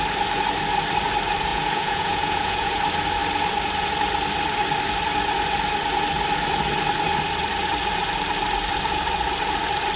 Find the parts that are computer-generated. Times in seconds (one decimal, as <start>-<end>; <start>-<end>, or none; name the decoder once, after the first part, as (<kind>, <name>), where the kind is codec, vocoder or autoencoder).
1.5-2.8 (vocoder, Vocos)